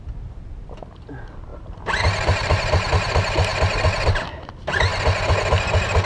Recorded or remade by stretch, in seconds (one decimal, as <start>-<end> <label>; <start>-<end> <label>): 0.0-1.5 recorded; 1.5-2.9 remade; 2.9-6.1 recorded

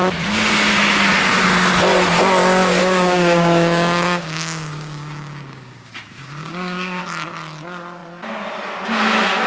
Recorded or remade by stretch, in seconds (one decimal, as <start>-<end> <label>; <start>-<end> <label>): 0.0-2.8 recorded; 2.8-7.0 remade; 7.0-9.5 recorded

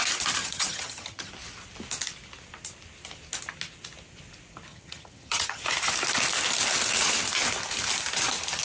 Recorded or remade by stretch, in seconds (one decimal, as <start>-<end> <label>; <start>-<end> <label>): 0.0-0.4 recorded; 0.4-1.3 remade; 1.3-4.7 recorded; 4.7-5.6 remade; 5.6-8.6 recorded

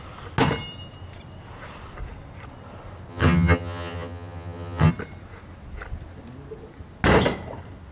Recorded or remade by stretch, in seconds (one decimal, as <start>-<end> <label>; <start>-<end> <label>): 0.0-3.1 recorded; 3.1-4.9 remade; 4.9-7.9 recorded

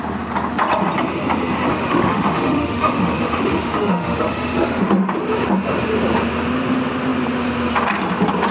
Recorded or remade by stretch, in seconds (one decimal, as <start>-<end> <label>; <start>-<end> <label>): 0.0-1.7 recorded; 1.7-4.9 remade; 4.9-8.5 recorded

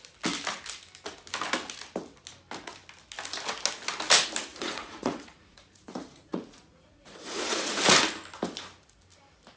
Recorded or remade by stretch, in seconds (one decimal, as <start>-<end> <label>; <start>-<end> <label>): 0.0-4.5 recorded; 4.5-7.8 remade; 7.8-9.6 recorded

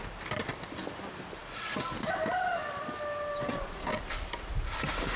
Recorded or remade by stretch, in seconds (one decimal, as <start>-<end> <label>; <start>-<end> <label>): 0.0-5.2 remade

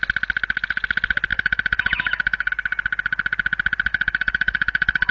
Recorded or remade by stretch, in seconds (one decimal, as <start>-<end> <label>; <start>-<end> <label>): 0.0-1.3 recorded; 1.3-2.5 remade; 2.5-3.9 recorded; 3.9-5.1 remade